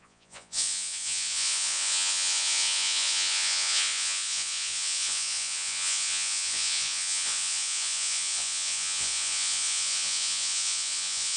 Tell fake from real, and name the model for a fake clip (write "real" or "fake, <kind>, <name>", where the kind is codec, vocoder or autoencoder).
fake, vocoder, Vocos